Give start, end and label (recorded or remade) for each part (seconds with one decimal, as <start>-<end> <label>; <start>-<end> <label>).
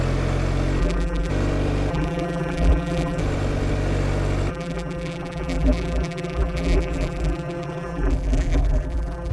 0.0-0.8 recorded; 0.8-1.3 remade; 1.3-1.9 recorded; 1.9-3.2 remade; 3.2-4.5 recorded; 4.5-9.3 remade